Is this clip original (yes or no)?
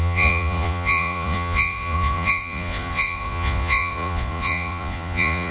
no